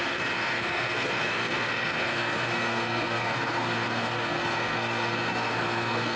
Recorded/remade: remade